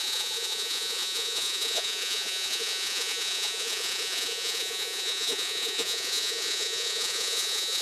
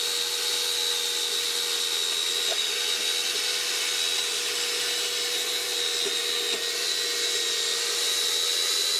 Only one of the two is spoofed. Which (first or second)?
first